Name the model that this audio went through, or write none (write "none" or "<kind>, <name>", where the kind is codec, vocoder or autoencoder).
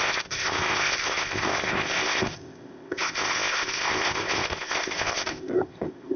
codec, ZipCodec